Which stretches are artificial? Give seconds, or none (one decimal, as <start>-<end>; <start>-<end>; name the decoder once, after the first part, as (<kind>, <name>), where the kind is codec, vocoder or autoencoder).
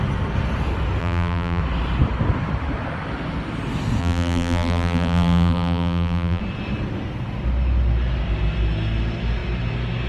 1.0-1.6 (vocoder, BigVGAN v2); 4.0-6.4